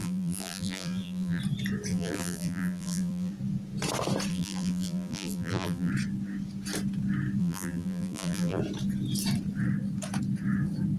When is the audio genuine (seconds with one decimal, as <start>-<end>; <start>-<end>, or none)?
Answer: 1.4-1.9; 3.3-4.3; 5.9-7.4; 8.6-11.0